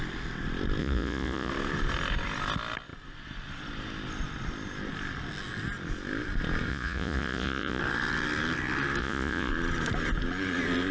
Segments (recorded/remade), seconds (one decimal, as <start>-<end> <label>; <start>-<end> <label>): 0.0-0.8 recorded; 0.8-1.5 remade; 1.5-6.7 recorded; 6.7-7.8 remade; 7.8-9.0 recorded; 9.0-9.5 remade; 9.5-10.9 recorded